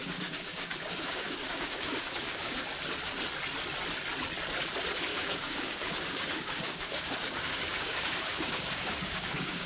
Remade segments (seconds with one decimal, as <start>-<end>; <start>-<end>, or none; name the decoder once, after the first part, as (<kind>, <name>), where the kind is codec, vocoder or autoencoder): 0.0-2.7 (codec, DAC); 5.1-9.7